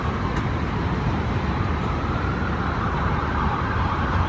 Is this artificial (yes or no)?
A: yes